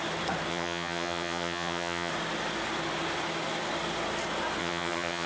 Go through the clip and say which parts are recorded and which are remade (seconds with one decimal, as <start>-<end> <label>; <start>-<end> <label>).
0.0-0.5 recorded; 0.5-2.1 remade; 2.1-4.6 recorded; 4.6-5.3 remade